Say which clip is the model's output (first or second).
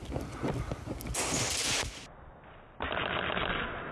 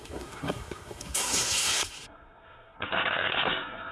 second